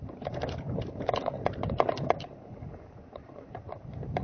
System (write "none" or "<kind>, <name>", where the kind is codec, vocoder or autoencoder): vocoder, BigVGAN v2